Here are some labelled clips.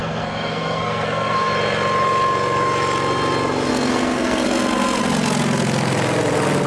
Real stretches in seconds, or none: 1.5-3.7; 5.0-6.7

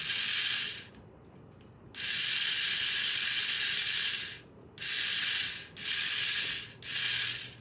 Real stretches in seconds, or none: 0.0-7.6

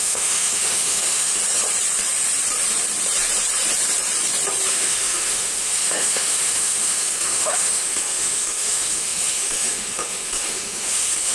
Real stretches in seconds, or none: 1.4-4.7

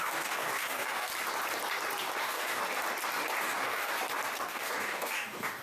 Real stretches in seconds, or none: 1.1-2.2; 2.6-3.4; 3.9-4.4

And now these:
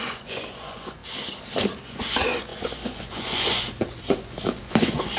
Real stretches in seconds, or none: 1.0-1.8

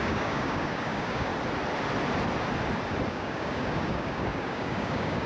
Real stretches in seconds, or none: 1.3-3.1

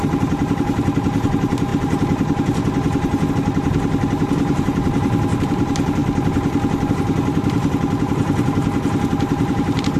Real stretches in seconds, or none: 6.0-6.9

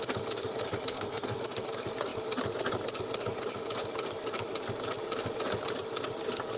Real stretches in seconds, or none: 0.0-0.9; 1.4-6.6